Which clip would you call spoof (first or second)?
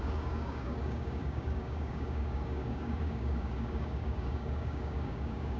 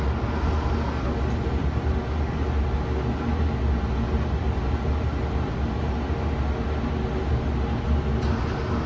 first